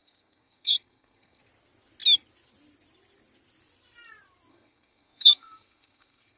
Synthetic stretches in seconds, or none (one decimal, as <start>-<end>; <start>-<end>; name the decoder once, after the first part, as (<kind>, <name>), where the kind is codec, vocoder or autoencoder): 0.0-1.4 (codec, SNAC); 4.5-6.4